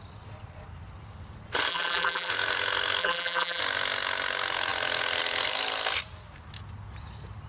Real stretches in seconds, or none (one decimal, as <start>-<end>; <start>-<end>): 0.0-1.7; 2.3-3.0; 3.6-7.5